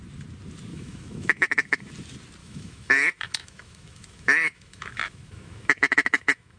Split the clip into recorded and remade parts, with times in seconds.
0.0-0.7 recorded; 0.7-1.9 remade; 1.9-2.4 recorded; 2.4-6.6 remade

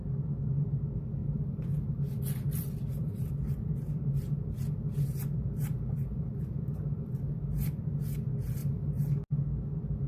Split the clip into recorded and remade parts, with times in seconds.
0.0-1.2 recorded; 1.2-2.2 remade; 2.2-2.9 recorded; 2.9-8.0 remade; 8.0-8.6 recorded; 8.6-9.1 remade; 9.1-10.1 recorded

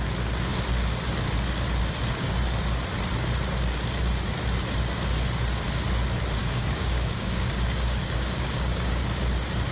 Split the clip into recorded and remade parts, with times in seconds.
0.0-6.4 recorded; 6.4-9.0 remade; 9.0-9.7 recorded

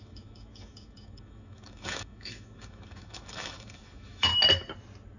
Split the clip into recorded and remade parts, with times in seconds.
0.0-4.3 remade; 4.3-5.2 recorded

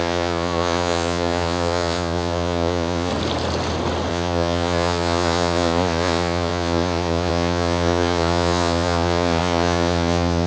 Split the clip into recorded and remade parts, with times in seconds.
0.0-3.1 remade; 3.1-4.1 recorded; 4.1-10.5 remade